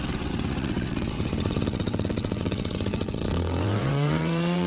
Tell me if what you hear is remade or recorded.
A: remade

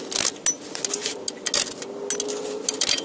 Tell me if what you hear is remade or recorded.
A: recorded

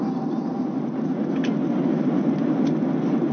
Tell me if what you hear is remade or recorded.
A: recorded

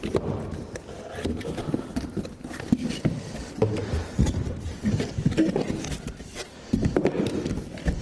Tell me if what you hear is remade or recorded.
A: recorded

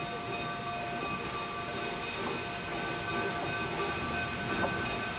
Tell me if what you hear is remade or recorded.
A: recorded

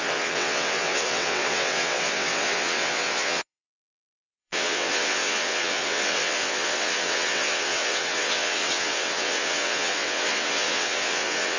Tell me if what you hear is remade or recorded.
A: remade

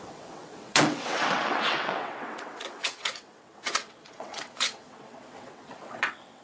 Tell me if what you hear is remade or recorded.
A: remade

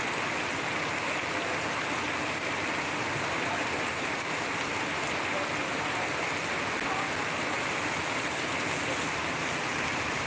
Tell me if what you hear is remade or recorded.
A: recorded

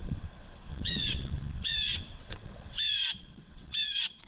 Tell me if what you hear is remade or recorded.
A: remade